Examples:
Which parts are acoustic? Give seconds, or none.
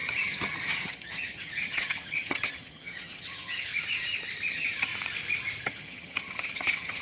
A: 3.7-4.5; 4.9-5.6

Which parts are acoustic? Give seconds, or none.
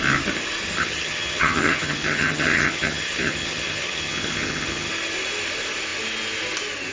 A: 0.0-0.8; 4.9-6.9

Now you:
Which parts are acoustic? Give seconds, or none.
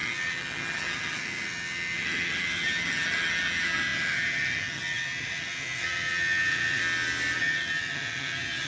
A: 6.8-7.4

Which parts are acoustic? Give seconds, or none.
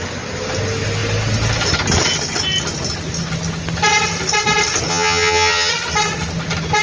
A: 0.0-4.9; 5.7-6.8